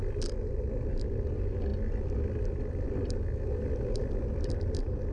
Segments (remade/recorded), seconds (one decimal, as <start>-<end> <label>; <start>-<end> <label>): 0.0-1.7 recorded; 1.7-5.1 remade